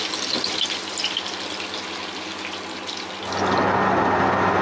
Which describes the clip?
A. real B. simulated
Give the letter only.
A